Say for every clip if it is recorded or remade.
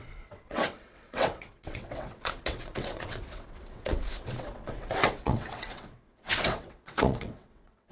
remade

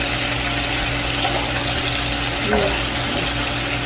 recorded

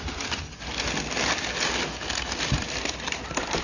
recorded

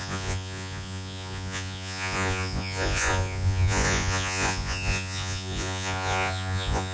remade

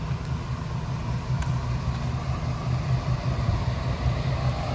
remade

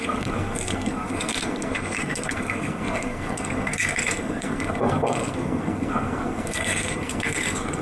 remade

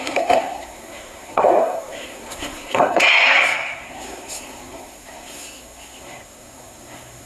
remade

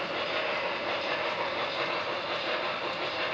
remade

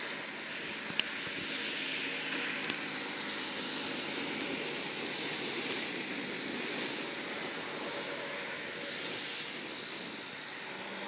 recorded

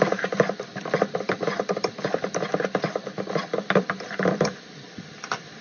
remade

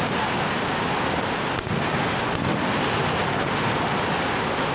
recorded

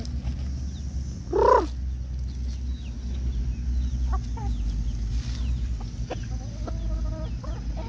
recorded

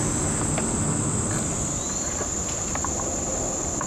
recorded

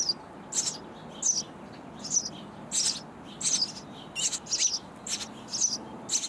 recorded